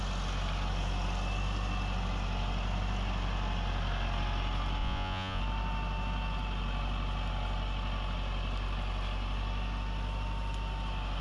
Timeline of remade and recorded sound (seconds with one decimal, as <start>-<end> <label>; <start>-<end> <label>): 0.0-4.8 recorded; 4.8-5.4 remade; 5.4-11.2 recorded